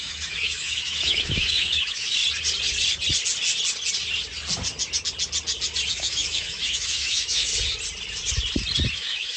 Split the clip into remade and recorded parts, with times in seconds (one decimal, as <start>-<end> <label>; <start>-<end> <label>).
0.0-2.2 remade; 2.2-5.9 recorded; 5.9-7.5 remade; 7.5-8.9 recorded; 8.9-9.4 remade

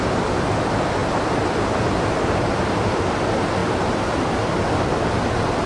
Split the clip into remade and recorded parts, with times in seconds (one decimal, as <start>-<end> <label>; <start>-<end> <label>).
0.0-3.6 recorded; 3.6-4.3 remade; 4.3-5.7 recorded

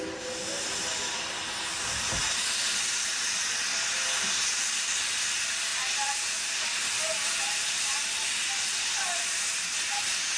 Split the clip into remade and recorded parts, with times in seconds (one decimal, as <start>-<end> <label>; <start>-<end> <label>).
0.0-10.4 recorded

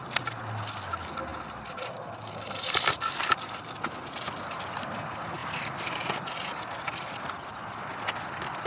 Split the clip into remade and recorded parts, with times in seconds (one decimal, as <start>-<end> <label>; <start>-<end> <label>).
0.0-8.7 recorded